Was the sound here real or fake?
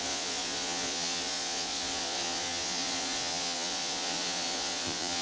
fake